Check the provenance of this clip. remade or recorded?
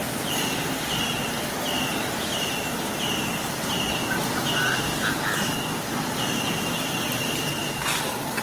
recorded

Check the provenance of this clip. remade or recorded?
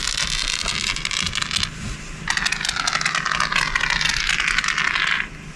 recorded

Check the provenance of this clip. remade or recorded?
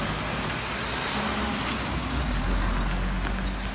recorded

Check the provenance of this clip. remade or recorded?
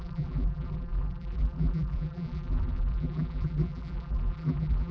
remade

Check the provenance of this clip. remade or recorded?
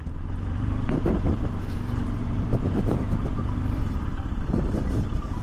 remade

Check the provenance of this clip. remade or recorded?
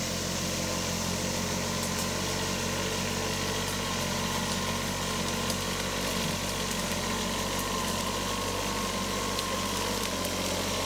recorded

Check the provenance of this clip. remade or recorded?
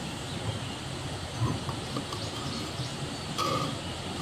recorded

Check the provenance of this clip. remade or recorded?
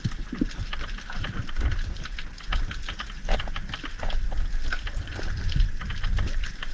recorded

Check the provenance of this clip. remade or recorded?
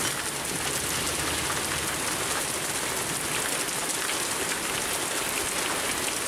recorded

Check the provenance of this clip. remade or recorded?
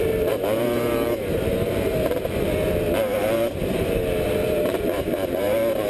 remade